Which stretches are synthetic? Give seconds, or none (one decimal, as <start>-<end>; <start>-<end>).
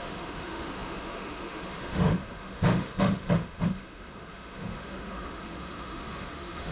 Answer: 0.0-6.7